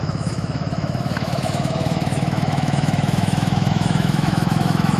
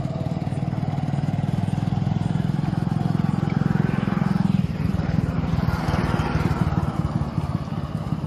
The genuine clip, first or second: second